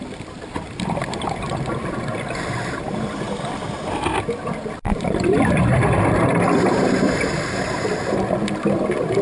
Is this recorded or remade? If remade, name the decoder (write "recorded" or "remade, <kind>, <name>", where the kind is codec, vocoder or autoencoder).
remade, vocoder, BigVGAN v2